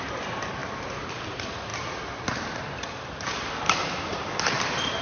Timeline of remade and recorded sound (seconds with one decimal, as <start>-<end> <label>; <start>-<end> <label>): 0.0-5.0 recorded